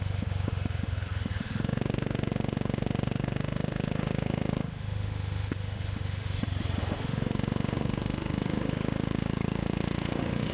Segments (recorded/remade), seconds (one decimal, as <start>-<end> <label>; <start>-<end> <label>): 0.0-6.4 remade; 6.4-7.0 recorded; 7.0-10.5 remade